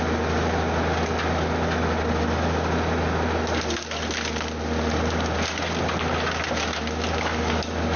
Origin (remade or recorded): recorded